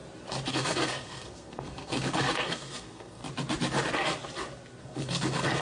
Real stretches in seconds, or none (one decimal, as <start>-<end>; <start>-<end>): 0.0-0.5; 3.2-4.8